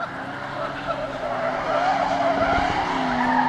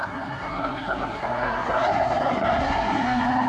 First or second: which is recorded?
first